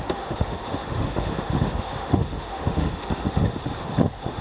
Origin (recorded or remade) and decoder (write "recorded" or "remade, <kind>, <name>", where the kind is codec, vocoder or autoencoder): remade, autoencoder, DAC-VAE